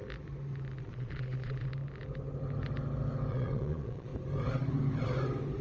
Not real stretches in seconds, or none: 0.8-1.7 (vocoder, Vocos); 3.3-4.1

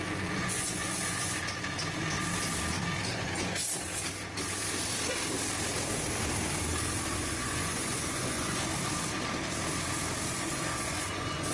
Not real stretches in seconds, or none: 0.0-1.4 (vocoder, Vocos); 3.0-3.6; 7.2-8.7; 10.3-11.5

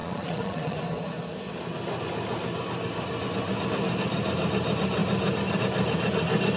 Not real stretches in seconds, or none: 0.0-0.8 (vocoder, Vocos)

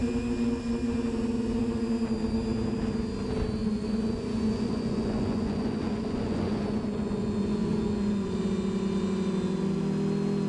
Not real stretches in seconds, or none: 3.6-8.4 (vocoder, Vocos)

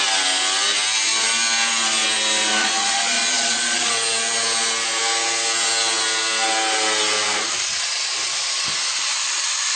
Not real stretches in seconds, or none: 2.6-3.9 (vocoder, Vocos)

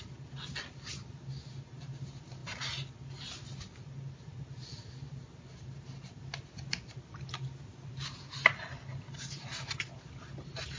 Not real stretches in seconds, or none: none

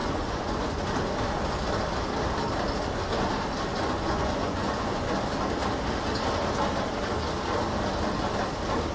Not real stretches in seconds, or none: 0.0-0.8 (vocoder, Vocos); 3.7-5.1